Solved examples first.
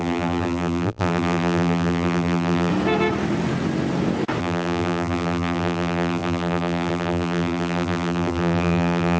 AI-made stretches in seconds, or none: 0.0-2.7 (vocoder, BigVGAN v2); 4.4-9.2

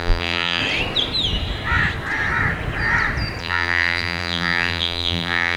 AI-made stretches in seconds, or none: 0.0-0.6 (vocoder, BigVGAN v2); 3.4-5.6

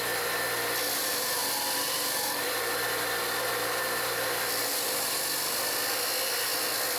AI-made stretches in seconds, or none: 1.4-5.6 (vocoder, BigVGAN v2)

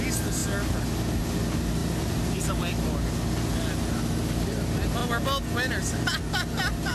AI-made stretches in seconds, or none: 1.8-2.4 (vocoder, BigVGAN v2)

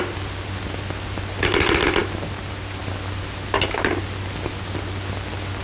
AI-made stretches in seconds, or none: none

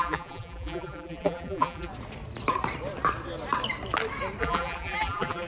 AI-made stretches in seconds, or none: 0.0-1.9 (vocoder, BigVGAN v2); 4.4-5.5